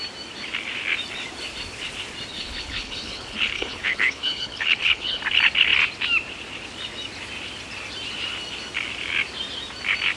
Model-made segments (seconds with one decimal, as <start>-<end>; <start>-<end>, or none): 2.3-5.2